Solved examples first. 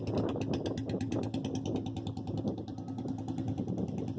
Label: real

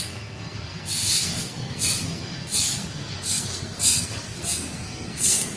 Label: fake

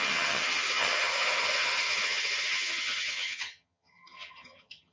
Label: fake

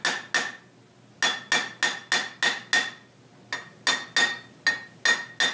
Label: real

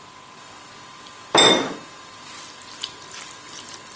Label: fake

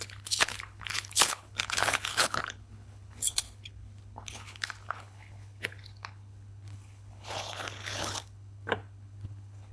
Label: fake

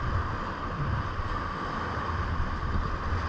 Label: real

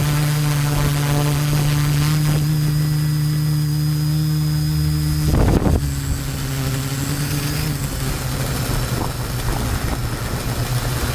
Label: real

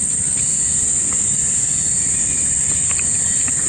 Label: real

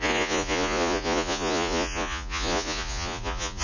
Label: fake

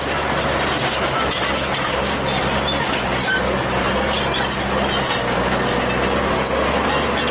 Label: real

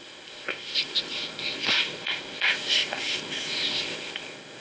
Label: fake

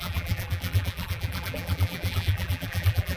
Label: fake